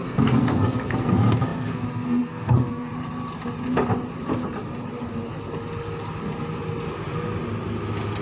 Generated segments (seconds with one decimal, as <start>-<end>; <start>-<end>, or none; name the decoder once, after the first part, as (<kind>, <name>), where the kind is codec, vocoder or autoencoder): 0.0-2.9 (codec, SNAC)